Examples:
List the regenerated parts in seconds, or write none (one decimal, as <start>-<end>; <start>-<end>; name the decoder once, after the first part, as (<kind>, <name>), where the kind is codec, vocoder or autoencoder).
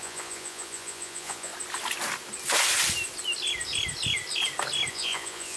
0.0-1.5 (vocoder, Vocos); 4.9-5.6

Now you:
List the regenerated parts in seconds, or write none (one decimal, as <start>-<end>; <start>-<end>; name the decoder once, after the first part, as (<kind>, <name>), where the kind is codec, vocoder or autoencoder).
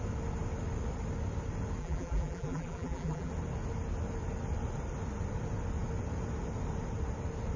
1.8-3.3 (vocoder, BigVGAN v2)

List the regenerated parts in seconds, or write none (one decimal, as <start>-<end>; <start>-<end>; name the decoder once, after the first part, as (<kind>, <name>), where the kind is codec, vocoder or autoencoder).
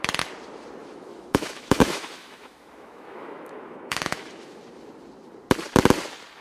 0.8-4.6 (autoencoder, DAC-VAE)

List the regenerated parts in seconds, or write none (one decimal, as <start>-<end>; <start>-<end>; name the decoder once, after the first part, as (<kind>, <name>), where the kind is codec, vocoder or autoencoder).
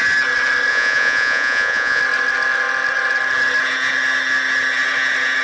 0.7-2.0 (vocoder, Vocos)